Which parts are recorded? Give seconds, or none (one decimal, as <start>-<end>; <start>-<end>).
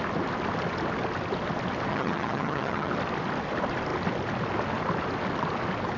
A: 0.0-1.9; 2.9-6.0